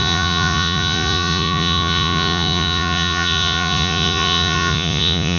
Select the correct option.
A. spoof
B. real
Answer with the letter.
A